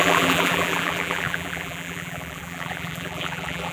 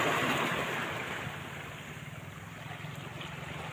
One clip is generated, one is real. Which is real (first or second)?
second